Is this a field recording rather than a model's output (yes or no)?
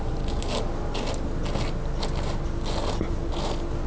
yes